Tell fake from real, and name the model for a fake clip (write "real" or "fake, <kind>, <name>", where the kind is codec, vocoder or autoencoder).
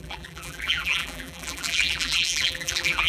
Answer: fake, vocoder, BigVGAN v2